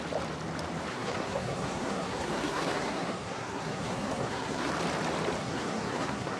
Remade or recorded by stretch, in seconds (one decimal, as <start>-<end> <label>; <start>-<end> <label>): 0.0-0.9 recorded; 0.9-4.7 remade; 4.7-5.4 recorded; 5.4-6.4 remade

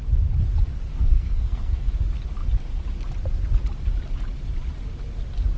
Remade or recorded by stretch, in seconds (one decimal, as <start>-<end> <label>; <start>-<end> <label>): 0.0-0.9 recorded; 0.9-1.9 remade; 1.9-5.6 recorded

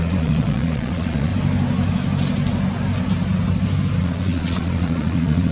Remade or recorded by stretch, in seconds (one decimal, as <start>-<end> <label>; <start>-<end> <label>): 0.0-1.3 remade; 1.3-4.0 recorded; 4.0-5.5 remade

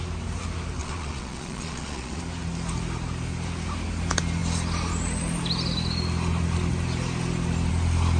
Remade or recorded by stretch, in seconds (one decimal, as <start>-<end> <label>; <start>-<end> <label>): 0.0-0.8 recorded; 0.8-2.2 remade; 2.2-8.2 recorded

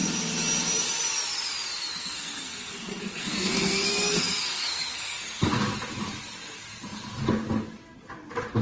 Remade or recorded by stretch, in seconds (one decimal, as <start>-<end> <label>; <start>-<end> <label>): 0.0-1.9 recorded; 1.9-5.6 remade; 5.6-8.6 recorded

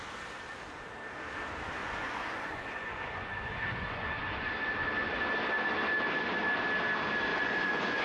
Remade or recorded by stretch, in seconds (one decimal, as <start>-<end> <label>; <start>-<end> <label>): 0.0-1.8 recorded; 1.8-4.5 remade; 4.5-7.3 recorded; 7.3-8.0 remade

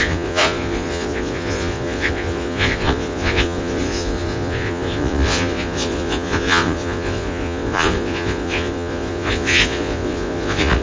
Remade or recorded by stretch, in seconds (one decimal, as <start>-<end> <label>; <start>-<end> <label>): 0.0-10.8 remade

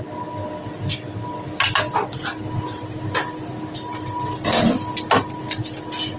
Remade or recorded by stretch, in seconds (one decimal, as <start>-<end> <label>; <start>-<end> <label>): 0.0-6.2 recorded